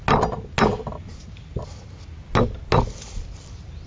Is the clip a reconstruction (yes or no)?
no